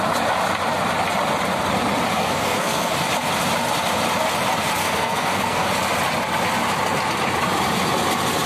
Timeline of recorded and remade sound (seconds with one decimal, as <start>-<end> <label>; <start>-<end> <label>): 0.0-2.2 recorded; 2.2-2.9 remade; 2.9-4.8 recorded; 4.8-5.7 remade; 5.7-8.5 recorded